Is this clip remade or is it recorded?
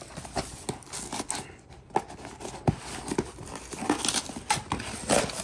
recorded